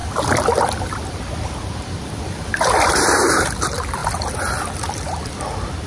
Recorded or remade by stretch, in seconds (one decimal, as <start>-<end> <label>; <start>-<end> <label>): 0.0-3.5 remade; 3.5-4.0 recorded; 4.0-5.9 remade